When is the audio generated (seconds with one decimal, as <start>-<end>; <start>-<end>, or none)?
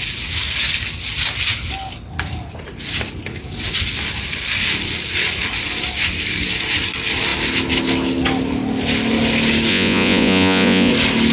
9.7-10.9